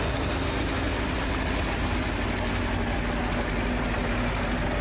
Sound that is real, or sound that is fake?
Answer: real